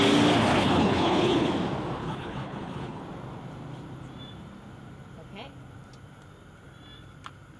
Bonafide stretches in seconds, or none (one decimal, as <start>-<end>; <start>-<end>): 0.0-0.5; 1.5-2.0; 3.0-7.6